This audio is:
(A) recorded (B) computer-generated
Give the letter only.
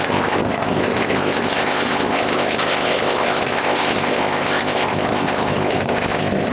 B